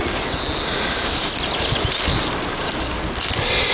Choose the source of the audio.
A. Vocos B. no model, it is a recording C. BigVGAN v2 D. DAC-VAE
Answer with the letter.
B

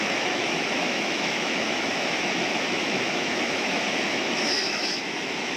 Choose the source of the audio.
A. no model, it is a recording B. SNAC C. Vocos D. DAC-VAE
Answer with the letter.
D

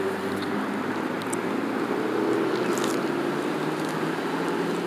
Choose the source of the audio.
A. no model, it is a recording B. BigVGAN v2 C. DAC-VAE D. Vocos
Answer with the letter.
A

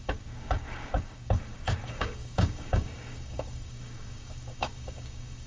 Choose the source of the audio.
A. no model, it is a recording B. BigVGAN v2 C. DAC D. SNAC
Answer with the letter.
C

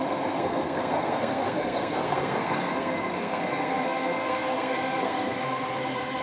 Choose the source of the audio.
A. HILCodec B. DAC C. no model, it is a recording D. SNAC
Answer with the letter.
D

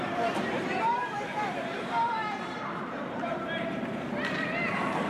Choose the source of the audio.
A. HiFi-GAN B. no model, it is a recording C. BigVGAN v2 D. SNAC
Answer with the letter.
C